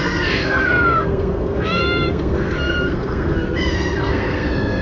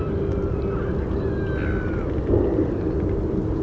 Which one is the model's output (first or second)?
first